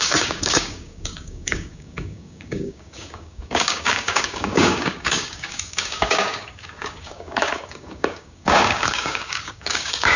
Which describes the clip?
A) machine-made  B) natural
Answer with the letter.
A